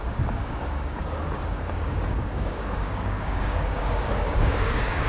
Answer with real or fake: fake